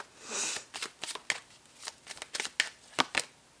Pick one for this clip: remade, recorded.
recorded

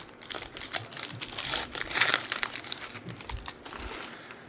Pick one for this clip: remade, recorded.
remade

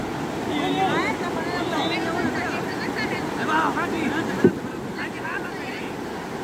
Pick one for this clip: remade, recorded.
recorded